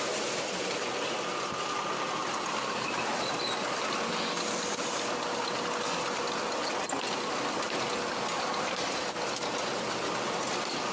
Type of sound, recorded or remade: recorded